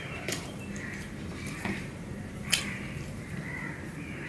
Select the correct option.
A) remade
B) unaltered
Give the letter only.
A